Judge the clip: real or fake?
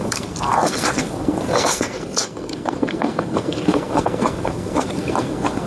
fake